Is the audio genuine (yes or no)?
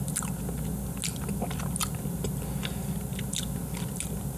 yes